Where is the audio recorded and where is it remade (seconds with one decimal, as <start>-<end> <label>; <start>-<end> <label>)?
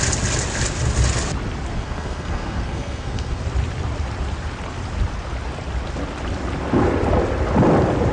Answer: 0.0-1.7 recorded; 1.7-3.4 remade; 3.4-8.1 recorded